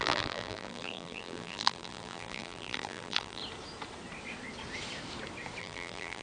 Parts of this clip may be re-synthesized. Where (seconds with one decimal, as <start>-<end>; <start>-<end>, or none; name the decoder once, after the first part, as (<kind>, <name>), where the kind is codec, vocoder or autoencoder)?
0.0-3.4 (vocoder, BigVGAN v2); 5.6-6.2